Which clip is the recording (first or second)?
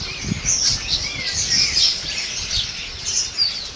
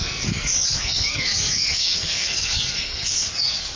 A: first